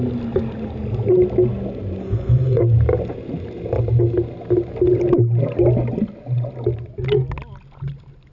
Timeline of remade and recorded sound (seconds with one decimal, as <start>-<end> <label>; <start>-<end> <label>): 0.0-2.0 recorded; 2.0-2.6 remade; 2.6-8.3 recorded